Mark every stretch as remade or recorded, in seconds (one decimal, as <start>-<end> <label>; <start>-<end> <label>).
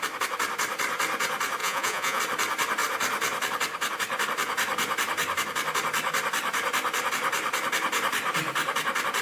0.0-1.6 recorded; 1.6-2.2 remade; 2.2-9.2 recorded